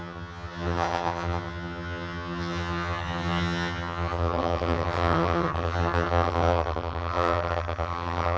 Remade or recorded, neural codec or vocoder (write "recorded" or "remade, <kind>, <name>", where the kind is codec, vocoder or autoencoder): remade, vocoder, HiFi-GAN